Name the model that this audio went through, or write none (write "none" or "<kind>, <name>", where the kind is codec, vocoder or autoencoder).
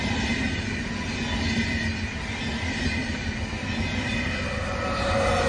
none